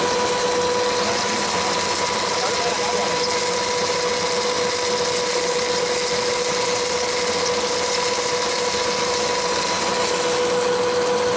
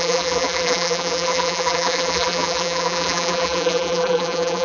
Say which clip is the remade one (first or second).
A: second